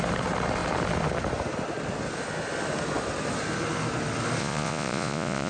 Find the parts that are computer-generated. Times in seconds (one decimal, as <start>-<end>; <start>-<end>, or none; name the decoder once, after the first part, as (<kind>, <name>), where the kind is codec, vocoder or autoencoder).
4.4-5.5 (vocoder, Vocos)